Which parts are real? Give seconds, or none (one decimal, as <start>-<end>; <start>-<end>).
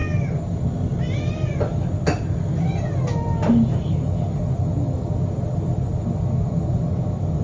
0.0-7.4